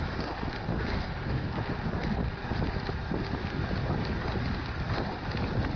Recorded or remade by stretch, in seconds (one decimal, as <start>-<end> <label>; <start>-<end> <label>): 0.0-0.9 recorded; 0.9-1.5 remade; 1.5-5.8 recorded

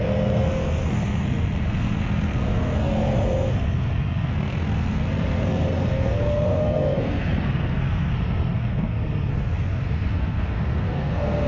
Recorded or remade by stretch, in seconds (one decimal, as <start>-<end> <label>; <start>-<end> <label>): 0.0-11.5 remade

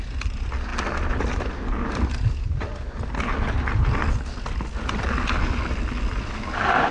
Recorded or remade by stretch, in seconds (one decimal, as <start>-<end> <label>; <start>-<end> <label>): 0.0-6.9 recorded

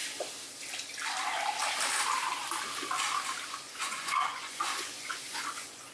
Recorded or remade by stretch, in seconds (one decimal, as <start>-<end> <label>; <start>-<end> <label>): 0.0-3.5 recorded; 3.5-5.9 remade

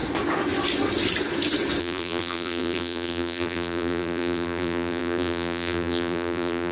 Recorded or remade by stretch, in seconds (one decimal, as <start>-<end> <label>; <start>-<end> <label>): 0.0-1.8 recorded; 1.8-6.7 remade

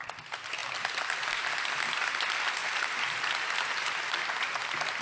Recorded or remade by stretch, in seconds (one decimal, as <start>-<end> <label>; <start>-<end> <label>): 0.0-2.6 recorded; 2.6-5.0 remade

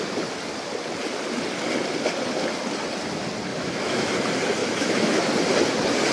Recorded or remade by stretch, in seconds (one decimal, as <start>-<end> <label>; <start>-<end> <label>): 0.0-3.5 recorded; 3.5-4.1 remade; 4.1-4.6 recorded; 4.6-5.3 remade; 5.3-6.1 recorded

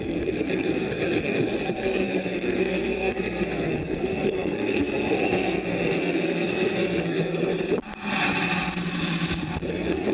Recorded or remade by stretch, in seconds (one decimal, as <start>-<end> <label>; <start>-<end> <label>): 0.0-7.5 remade; 7.5-9.7 recorded; 9.7-10.1 remade